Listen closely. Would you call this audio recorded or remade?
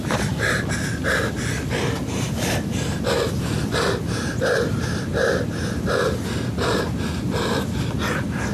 recorded